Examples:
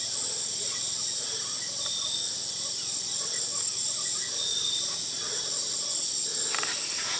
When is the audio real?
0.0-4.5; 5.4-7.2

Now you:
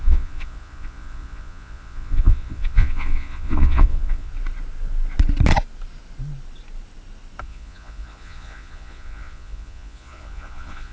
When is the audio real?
4.3-7.4